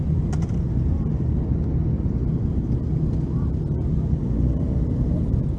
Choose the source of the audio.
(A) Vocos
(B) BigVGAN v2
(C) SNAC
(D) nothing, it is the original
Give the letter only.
D